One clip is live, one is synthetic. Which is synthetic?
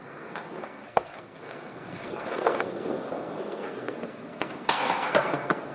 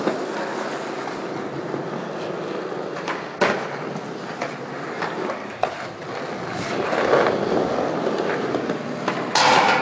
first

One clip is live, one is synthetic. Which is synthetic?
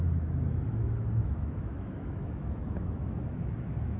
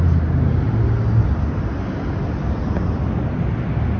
first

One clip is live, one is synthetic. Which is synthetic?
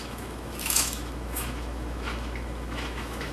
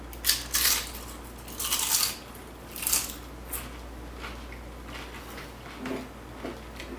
first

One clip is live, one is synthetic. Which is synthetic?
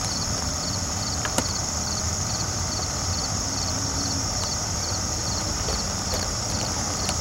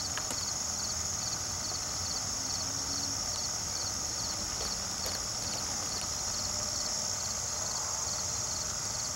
first